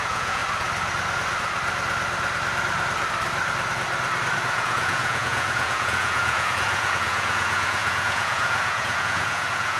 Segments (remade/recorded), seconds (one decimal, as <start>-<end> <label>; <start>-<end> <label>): 0.0-0.4 remade; 0.4-4.5 recorded; 4.5-9.8 remade